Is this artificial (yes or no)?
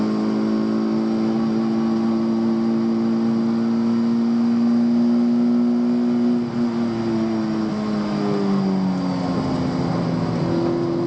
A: no